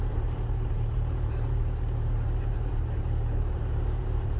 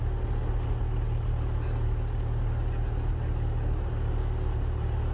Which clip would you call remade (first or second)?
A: first